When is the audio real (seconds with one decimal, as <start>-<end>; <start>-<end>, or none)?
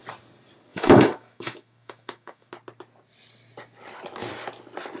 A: 0.0-0.7; 2.5-5.0